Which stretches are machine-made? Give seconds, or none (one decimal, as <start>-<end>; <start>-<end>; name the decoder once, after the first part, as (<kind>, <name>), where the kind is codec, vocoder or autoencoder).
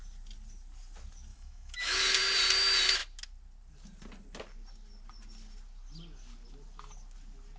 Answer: 1.3-2.2 (autoencoder, DAC-VAE)